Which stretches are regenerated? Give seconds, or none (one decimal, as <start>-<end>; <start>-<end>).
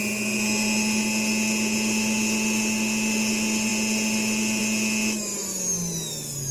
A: none